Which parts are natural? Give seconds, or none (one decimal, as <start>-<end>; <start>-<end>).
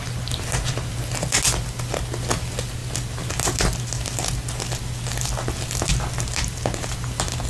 0.0-7.5